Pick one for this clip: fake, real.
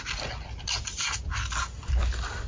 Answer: real